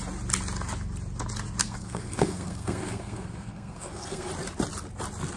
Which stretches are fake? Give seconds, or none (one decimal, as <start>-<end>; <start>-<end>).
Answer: 1.6-4.3